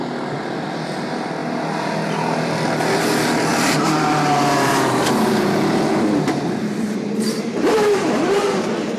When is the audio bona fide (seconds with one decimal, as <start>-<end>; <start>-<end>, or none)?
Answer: 0.0-3.5; 8.4-9.0